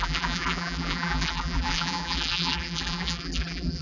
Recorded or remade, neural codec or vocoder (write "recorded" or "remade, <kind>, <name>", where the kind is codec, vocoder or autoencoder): remade, vocoder, BigVGAN v2